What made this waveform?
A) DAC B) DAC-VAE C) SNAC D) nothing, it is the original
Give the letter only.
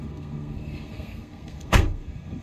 C